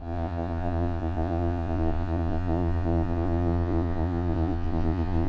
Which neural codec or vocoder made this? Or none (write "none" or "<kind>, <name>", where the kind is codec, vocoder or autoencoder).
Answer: vocoder, Vocos